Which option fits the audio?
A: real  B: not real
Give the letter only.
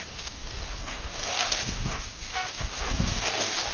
B